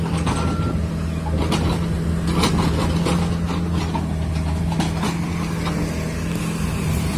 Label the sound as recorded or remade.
recorded